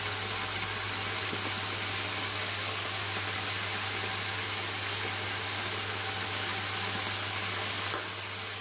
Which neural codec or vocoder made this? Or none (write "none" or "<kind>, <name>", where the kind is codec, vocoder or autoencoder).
none